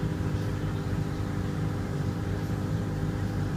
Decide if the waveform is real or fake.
fake